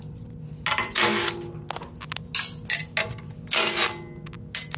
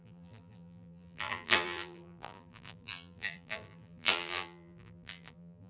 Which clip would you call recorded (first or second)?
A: first